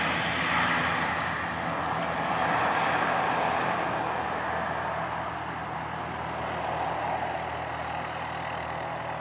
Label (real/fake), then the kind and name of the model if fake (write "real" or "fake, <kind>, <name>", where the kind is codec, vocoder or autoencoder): real